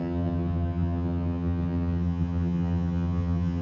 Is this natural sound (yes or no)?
no